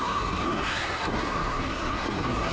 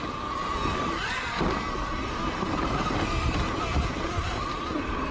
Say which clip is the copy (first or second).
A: first